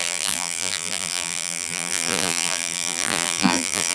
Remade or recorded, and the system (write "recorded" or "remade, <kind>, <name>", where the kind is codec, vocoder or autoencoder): remade, vocoder, BigVGAN v2